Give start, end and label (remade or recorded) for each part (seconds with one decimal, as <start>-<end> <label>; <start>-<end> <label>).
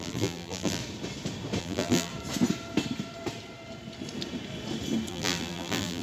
0.0-0.8 remade; 0.8-1.6 recorded; 1.6-2.1 remade; 2.1-5.1 recorded; 5.1-6.0 remade